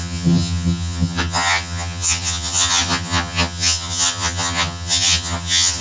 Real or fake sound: fake